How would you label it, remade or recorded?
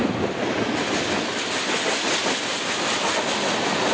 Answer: recorded